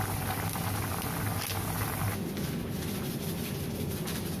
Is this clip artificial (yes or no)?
no